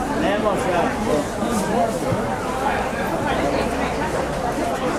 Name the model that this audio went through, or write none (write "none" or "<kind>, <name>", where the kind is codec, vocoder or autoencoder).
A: none